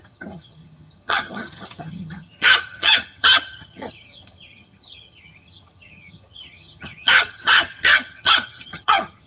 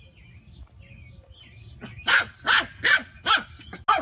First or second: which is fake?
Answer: first